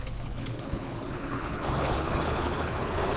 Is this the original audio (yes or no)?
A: no